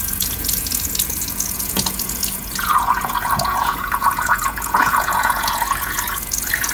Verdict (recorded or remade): remade